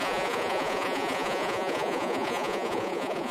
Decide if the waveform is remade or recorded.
remade